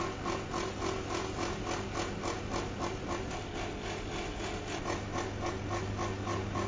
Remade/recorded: recorded